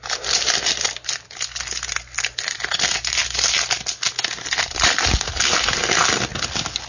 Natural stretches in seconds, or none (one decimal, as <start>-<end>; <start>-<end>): 0.0-6.9